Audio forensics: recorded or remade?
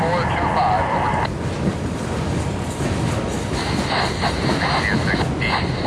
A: recorded